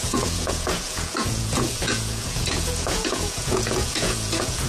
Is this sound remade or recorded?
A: remade